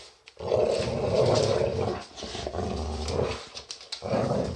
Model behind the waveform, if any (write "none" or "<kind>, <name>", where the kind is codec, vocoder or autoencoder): none